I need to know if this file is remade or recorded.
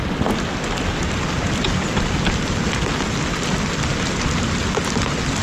recorded